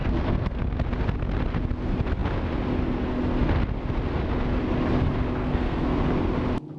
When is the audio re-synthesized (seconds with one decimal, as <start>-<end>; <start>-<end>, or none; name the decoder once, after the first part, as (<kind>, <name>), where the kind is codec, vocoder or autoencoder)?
0.0-0.6 (codec, SNAC); 5.4-6.0